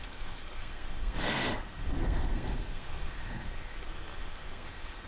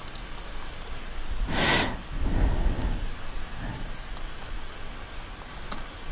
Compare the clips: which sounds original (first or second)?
second